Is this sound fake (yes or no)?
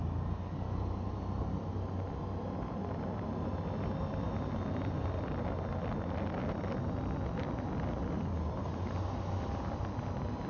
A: no